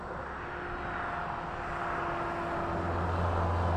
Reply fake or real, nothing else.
real